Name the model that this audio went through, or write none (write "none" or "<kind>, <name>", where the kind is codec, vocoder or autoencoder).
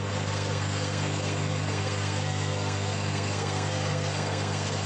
codec, SNAC